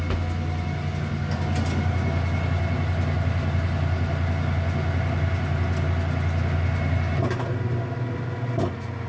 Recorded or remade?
recorded